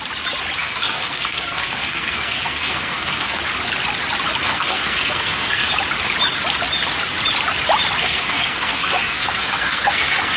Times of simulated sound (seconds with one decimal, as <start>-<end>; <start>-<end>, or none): 0.6-3.4; 4.4-5.7; 8.0-10.4